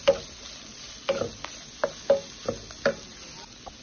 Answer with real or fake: real